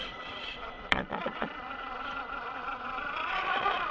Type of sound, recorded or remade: remade